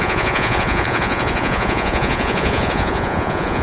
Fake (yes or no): yes